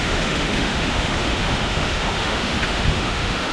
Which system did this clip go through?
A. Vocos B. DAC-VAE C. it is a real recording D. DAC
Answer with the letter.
B